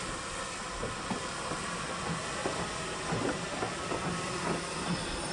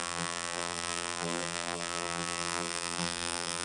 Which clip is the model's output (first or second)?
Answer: second